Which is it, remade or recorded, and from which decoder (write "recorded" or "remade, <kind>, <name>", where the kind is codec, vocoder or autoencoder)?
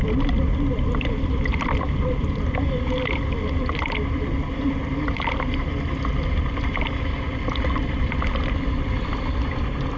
recorded